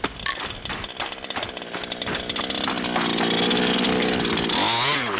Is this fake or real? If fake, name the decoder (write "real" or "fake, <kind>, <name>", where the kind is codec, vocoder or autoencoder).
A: real